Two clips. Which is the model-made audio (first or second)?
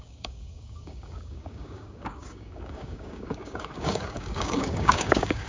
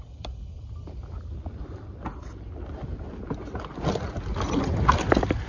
first